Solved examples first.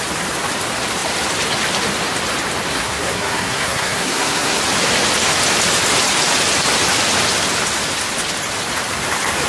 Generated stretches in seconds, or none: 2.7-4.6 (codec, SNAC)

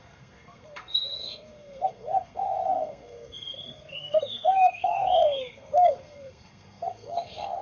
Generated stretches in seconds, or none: 0.0-7.6 (codec, SNAC)

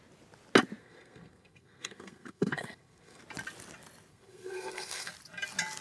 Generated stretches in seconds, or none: 0.8-3.2 (codec, SNAC); 4.1-5.1

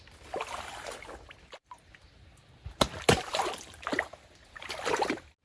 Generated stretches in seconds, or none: none